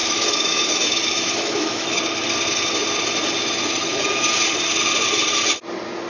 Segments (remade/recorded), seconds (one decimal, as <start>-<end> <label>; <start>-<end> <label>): 0.0-2.0 remade; 2.0-6.1 recorded